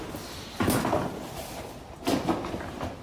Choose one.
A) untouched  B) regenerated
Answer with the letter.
A